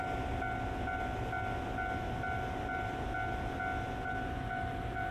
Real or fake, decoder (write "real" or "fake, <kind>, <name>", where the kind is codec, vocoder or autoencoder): real